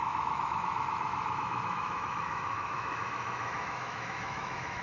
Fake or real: fake